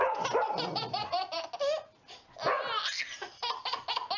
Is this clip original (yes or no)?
yes